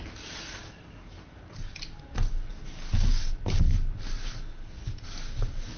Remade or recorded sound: recorded